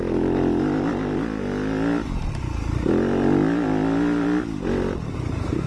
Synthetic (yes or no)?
no